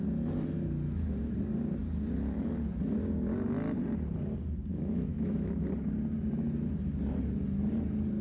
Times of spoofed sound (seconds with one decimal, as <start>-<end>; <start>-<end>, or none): 4.7-5.6